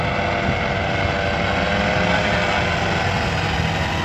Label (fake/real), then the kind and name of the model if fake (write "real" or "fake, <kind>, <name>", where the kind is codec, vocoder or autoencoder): real